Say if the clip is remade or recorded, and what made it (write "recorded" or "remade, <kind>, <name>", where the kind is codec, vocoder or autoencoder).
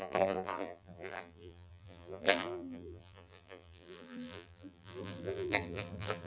remade, vocoder, BigVGAN v2